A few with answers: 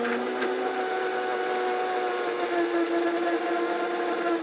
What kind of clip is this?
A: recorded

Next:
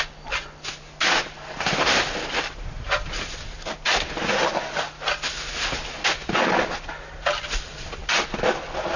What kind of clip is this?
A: recorded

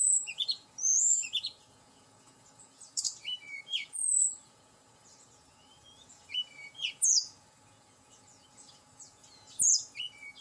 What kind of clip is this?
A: remade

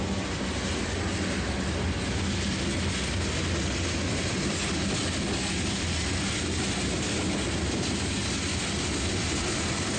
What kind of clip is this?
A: recorded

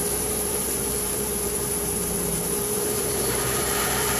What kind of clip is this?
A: remade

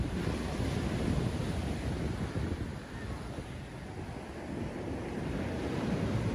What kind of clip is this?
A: recorded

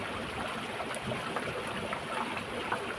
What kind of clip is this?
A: recorded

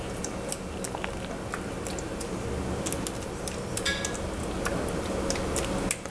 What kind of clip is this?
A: recorded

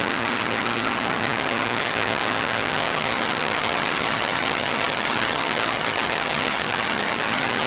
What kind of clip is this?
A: remade